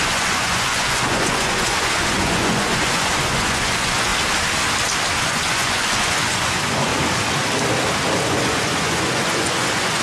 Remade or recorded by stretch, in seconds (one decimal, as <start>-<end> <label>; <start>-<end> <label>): 0.0-4.1 remade; 4.1-5.2 recorded; 5.2-6.9 remade; 6.9-8.2 recorded; 8.2-10.0 remade